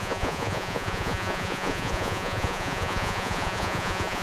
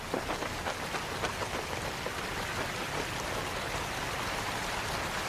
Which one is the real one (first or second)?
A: second